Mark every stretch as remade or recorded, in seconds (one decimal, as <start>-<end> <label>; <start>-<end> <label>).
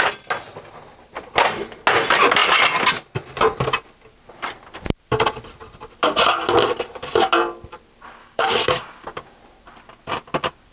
0.0-8.2 recorded; 8.2-9.4 remade; 9.4-10.7 recorded